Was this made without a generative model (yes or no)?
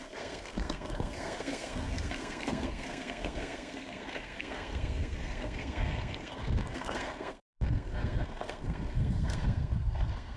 no